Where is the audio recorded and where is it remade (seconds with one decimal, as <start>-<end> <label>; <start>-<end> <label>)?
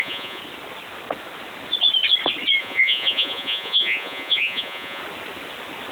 0.0-0.4 remade; 0.4-2.6 recorded; 2.6-5.0 remade; 5.0-5.9 recorded